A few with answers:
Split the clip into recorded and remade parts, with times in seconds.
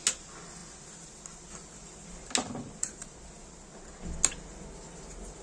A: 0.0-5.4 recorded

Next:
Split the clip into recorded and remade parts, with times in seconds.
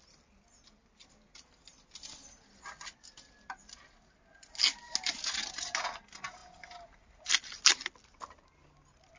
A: 0.0-9.2 recorded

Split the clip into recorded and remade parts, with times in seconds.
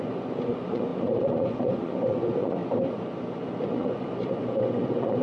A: 0.0-2.6 remade; 2.6-3.6 recorded; 3.6-5.2 remade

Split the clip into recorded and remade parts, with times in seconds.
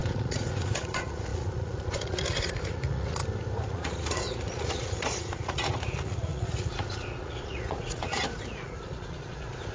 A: 0.0-3.2 remade; 3.2-3.7 recorded; 3.7-9.7 remade